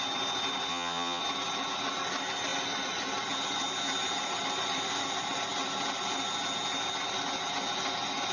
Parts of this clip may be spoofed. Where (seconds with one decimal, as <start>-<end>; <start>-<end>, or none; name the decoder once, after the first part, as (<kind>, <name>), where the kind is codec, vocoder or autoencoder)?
0.7-1.2 (vocoder, Vocos)